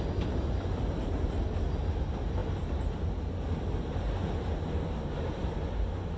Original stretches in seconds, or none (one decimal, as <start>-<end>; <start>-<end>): 0.0-6.2